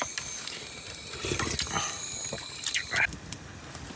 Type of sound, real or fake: real